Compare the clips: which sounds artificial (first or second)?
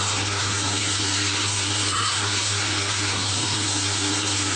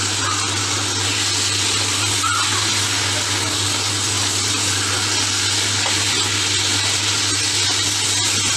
first